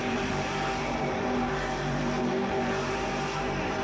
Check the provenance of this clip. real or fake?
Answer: fake